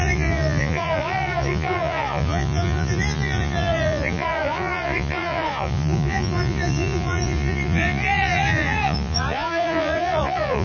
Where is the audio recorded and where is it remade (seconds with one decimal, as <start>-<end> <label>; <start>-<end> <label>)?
0.0-10.6 remade